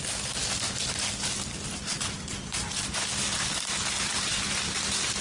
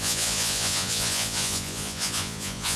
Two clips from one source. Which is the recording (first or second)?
first